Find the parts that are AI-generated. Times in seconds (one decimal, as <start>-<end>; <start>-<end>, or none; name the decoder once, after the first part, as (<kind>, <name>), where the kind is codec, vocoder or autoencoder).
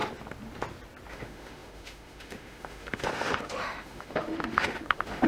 1.1-5.3 (autoencoder, DAC-VAE)